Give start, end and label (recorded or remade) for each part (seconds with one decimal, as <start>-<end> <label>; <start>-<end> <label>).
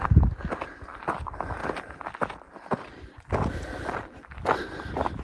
0.0-5.2 recorded